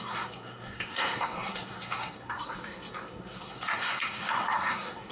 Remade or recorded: remade